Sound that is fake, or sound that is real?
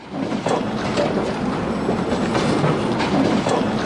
real